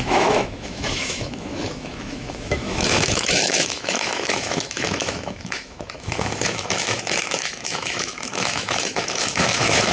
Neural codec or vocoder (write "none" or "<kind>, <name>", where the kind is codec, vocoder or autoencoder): autoencoder, DAC-VAE